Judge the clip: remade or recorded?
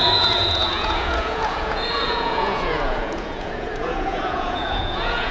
remade